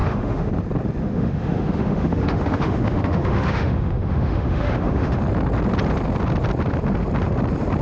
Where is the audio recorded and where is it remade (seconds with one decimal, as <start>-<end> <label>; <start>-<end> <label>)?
0.0-0.5 remade; 0.5-1.0 recorded; 1.0-5.2 remade; 5.2-7.8 recorded